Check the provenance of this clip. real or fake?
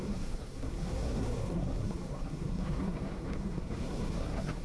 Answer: fake